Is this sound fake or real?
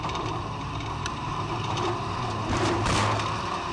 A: fake